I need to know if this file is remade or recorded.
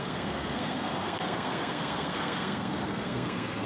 remade